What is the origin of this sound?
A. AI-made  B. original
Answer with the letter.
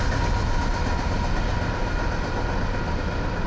B